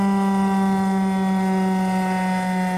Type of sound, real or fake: real